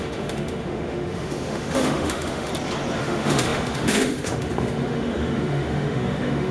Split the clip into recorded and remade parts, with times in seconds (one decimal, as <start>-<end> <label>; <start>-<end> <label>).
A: 0.0-2.5 remade; 2.5-3.0 recorded; 3.0-6.5 remade

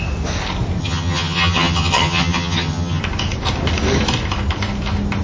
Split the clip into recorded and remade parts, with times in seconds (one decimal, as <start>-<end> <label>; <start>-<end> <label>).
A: 0.0-0.8 recorded; 0.8-3.0 remade; 3.0-5.2 recorded